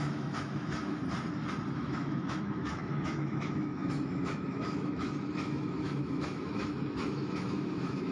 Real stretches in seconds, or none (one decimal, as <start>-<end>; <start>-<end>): 1.0-1.7